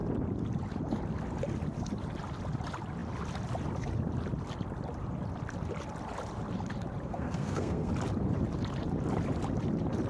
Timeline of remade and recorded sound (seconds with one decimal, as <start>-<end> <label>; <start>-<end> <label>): 0.0-7.1 recorded; 7.1-7.9 remade; 7.9-10.1 recorded